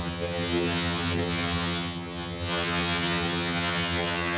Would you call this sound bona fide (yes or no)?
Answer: no